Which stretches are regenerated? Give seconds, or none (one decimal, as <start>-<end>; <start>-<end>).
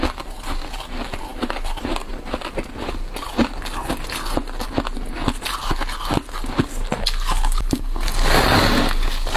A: none